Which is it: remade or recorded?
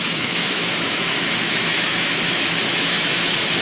remade